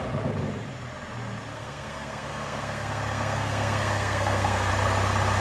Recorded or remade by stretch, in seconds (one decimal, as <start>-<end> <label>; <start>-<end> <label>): 0.0-1.5 recorded; 1.5-4.7 remade; 4.7-5.4 recorded